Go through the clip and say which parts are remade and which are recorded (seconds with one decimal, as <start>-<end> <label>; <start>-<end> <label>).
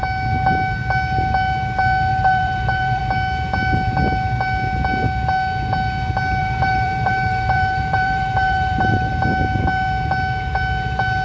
0.0-2.1 recorded; 2.1-3.0 remade; 3.0-6.4 recorded; 6.4-9.1 remade; 9.1-11.2 recorded